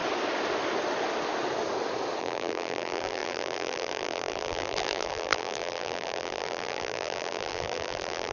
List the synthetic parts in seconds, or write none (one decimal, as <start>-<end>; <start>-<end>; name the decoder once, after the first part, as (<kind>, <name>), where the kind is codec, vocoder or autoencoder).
2.2-8.3 (vocoder, BigVGAN v2)